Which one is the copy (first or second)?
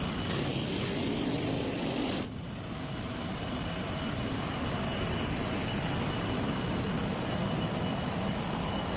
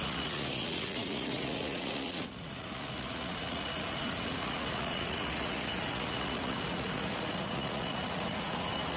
second